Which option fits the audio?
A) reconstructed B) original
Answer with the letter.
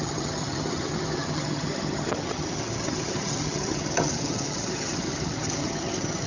A